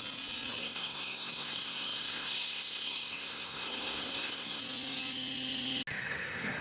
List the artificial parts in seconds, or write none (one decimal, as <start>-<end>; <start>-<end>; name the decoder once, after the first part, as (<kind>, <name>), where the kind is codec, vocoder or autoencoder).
0.6-4.6 (codec, SNAC); 5.9-6.6